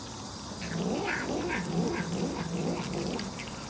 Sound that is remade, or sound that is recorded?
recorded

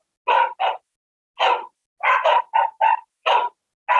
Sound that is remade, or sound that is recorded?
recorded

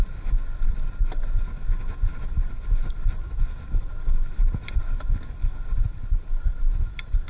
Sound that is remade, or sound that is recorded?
recorded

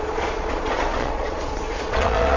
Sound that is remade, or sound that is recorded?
remade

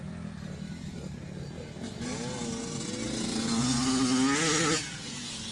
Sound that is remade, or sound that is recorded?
recorded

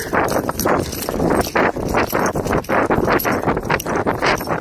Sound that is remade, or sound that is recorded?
recorded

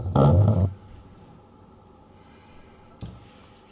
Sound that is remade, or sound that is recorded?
recorded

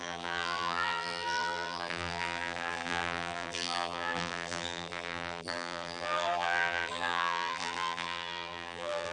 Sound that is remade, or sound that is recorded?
remade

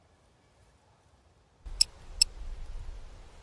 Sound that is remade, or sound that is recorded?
recorded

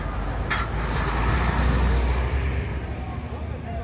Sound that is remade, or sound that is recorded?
recorded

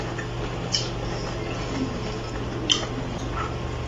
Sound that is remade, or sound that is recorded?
remade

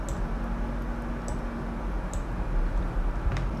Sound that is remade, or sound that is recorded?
recorded